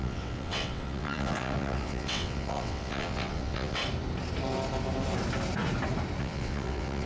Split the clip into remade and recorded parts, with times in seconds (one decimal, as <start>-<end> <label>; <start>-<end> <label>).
0.0-3.8 remade; 3.8-6.2 recorded; 6.2-7.1 remade